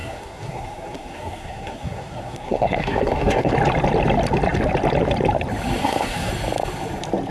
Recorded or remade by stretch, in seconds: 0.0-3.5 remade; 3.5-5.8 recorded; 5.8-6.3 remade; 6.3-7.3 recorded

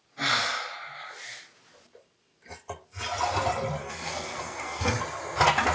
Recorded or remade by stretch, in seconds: 0.0-3.8 recorded; 3.8-4.9 remade; 4.9-5.7 recorded